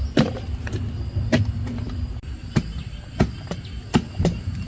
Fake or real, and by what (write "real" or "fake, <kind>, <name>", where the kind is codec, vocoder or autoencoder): real